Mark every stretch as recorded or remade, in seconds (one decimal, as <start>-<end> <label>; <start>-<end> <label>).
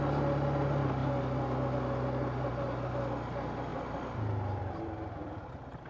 0.0-3.7 recorded; 3.7-5.9 remade